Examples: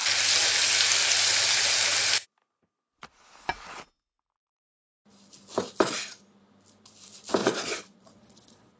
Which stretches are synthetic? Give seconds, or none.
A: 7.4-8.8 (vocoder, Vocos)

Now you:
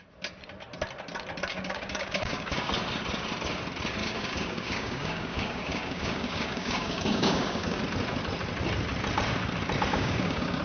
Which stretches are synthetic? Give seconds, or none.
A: 1.5-2.7 (codec, DAC); 4.0-7.8; 9.9-10.6

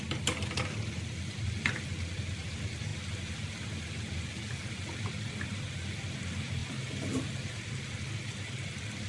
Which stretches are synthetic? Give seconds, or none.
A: none